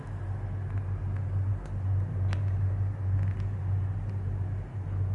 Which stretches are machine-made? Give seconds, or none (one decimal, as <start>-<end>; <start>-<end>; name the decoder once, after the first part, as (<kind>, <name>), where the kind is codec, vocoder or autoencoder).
none